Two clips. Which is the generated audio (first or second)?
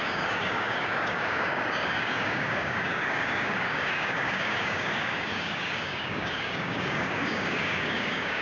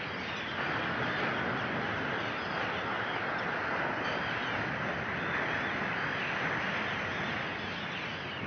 first